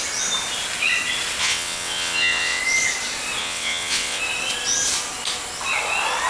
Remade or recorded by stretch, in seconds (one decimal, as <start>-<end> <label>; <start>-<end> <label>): 0.0-1.4 recorded; 1.4-2.6 remade; 2.6-3.4 recorded; 3.4-4.2 remade; 4.2-6.3 recorded